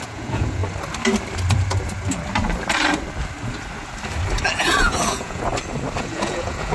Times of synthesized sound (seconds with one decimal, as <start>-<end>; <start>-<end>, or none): 0.0-0.6; 4.6-5.5; 6.0-6.7